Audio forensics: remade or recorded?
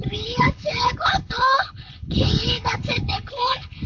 remade